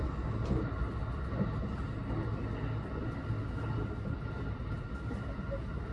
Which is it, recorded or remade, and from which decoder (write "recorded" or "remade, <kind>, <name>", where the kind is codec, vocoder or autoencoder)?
recorded